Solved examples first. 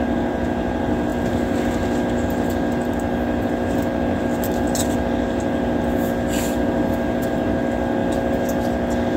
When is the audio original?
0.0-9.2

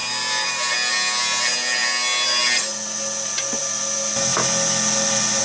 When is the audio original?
0.0-5.4

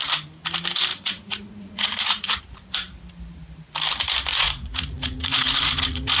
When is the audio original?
0.0-0.9; 2.4-4.3

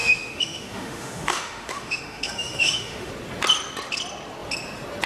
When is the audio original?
3.1-5.1

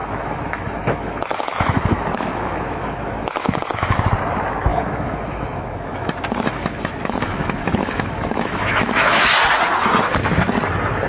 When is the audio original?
4.1-4.7; 9.2-11.1

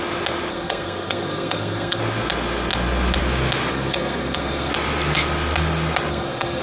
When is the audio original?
0.0-0.5; 2.0-3.7; 4.7-6.1